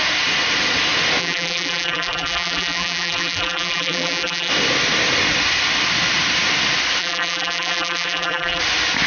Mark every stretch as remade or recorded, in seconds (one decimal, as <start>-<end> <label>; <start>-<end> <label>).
0.0-1.2 recorded; 1.2-4.5 remade; 4.5-7.0 recorded; 7.0-8.6 remade; 8.6-9.1 recorded